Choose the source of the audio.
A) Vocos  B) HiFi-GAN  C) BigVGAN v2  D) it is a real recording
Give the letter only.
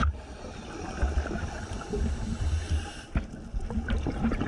D